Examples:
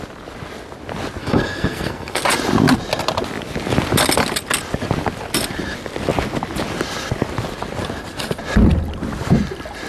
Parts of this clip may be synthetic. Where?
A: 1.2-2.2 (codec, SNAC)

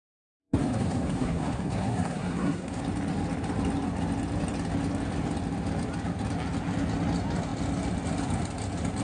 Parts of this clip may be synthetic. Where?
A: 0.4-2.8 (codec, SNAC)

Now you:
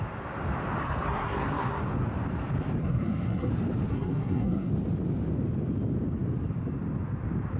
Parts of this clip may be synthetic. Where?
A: 0.8-1.8 (codec, SNAC); 2.8-3.5; 3.9-4.7

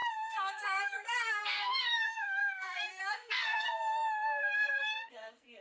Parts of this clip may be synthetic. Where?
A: 0.0-5.6 (codec, SNAC)